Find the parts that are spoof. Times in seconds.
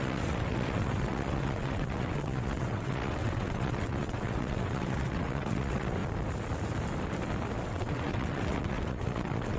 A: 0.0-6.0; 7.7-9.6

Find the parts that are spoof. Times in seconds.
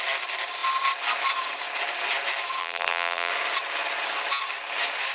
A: 2.6-3.3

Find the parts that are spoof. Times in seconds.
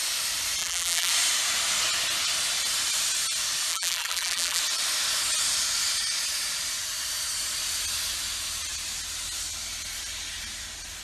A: 0.6-1.1; 3.7-4.6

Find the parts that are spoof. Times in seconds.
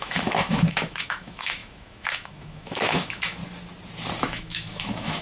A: 0.0-3.4; 4.2-5.2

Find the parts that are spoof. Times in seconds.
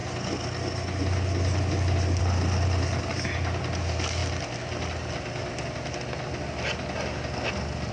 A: 2.2-4.2